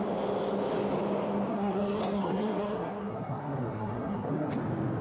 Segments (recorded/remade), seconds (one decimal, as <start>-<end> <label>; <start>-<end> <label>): 0.0-1.5 recorded; 1.5-4.5 remade; 4.5-5.0 recorded